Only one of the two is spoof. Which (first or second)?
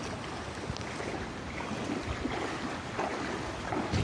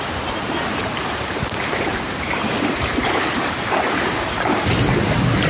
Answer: second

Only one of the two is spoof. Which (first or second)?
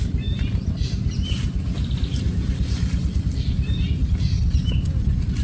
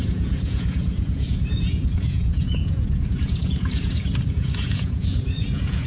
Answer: second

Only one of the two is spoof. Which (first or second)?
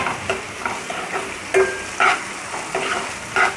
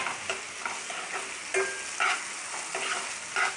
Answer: first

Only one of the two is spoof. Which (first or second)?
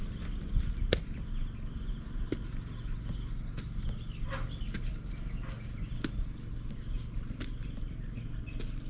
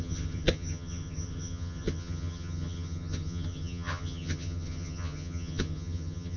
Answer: second